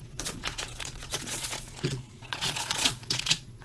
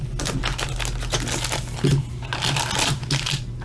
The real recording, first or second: second